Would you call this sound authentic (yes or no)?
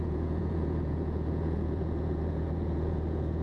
no